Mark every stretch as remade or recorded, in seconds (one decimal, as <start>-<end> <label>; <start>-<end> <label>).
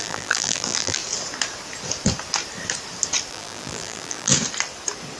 0.0-1.0 remade; 1.0-3.3 recorded; 3.3-4.3 remade; 4.3-5.2 recorded